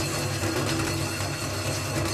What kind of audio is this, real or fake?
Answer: real